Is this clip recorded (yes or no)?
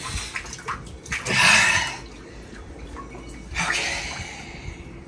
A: yes